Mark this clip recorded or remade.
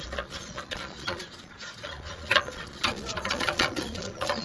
remade